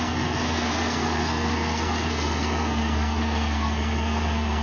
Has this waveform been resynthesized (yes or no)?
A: yes